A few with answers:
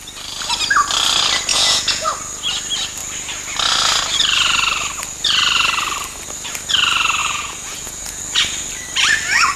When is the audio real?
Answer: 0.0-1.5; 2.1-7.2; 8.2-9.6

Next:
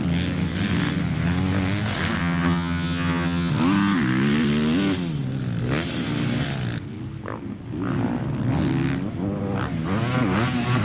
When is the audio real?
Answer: 0.0-2.2; 3.5-10.8

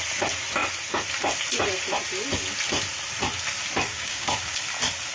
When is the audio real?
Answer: 0.0-3.9; 4.6-5.1

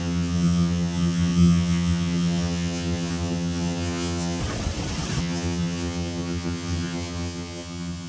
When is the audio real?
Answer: 4.4-5.2

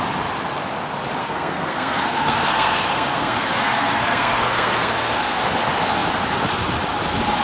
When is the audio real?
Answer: 0.0-1.2; 5.4-7.4

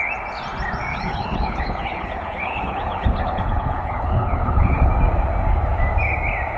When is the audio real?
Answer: 0.0-0.9; 4.9-6.6

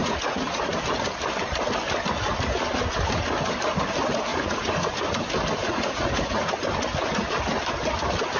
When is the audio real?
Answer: 0.7-4.3; 4.9-5.6; 6.5-8.4

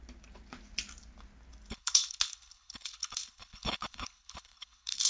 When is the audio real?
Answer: 0.0-1.7